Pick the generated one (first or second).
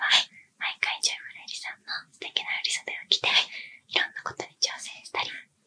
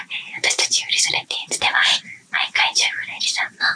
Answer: second